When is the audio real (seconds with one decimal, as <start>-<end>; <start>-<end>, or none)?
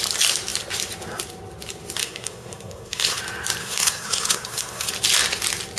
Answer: 0.0-2.0; 3.2-3.6; 4.9-5.8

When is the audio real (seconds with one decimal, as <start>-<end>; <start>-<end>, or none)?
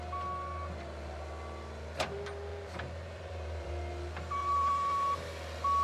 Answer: 0.0-2.5; 3.7-4.4; 5.3-5.8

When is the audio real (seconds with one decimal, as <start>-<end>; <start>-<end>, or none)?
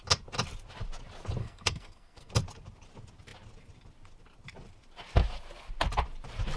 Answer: 0.0-1.4; 2.3-6.6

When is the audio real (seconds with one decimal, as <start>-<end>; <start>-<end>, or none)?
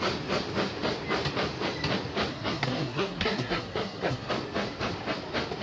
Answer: 0.0-2.3; 4.3-5.6